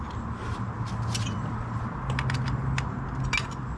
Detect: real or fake real